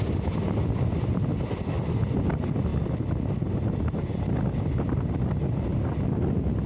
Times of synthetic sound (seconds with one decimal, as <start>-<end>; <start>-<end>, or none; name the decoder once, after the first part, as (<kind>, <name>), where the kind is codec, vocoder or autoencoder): none